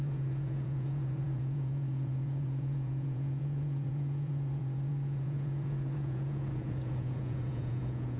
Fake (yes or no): yes